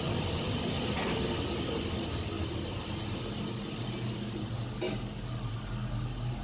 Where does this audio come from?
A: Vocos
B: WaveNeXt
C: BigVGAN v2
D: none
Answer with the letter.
D